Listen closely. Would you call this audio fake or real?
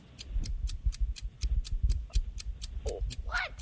real